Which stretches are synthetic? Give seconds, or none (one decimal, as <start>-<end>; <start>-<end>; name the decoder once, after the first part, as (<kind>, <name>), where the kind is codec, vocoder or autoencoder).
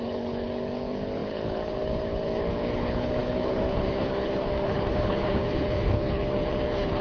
0.0-7.0 (codec, HILCodec)